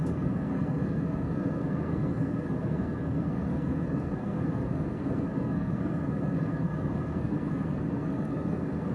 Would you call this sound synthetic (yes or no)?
yes